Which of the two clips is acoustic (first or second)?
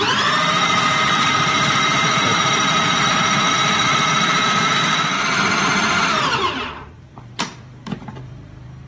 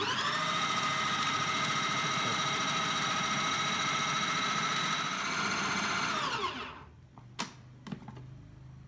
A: second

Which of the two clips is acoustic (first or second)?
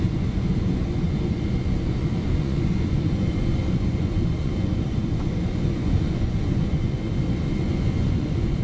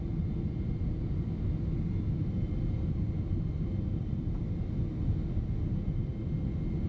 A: second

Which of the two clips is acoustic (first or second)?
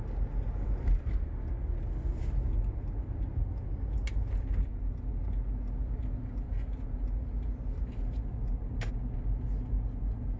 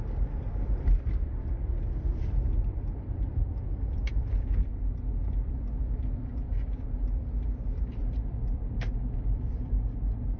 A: first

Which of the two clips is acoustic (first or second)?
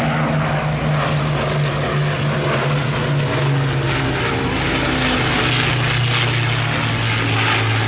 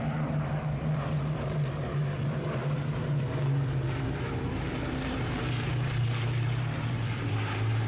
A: first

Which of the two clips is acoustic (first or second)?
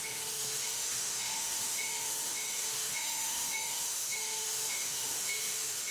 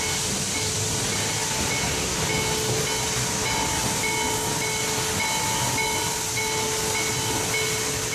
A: second